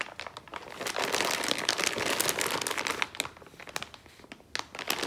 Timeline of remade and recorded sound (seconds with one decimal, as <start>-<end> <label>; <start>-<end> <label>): 0.0-5.1 recorded